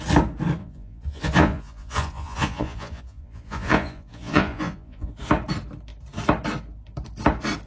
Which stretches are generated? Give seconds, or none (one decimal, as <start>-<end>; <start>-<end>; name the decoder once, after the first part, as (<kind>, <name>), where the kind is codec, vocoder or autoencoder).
0.6-5.1 (vocoder, Vocos)

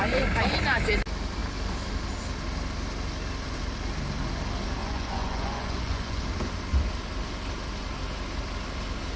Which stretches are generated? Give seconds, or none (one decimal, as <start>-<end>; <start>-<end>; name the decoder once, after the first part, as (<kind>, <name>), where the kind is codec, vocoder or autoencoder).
4.8-6.2 (vocoder, Vocos)